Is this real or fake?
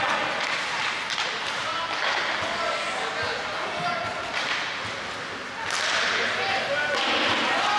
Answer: real